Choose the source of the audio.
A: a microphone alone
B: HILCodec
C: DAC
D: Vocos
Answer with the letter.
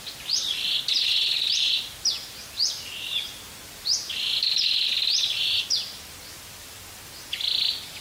A